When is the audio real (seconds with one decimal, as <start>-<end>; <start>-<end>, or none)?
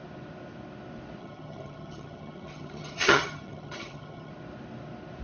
0.0-1.2; 4.3-5.2